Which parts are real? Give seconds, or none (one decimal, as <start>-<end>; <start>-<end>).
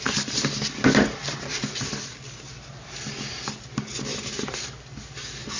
0.0-5.6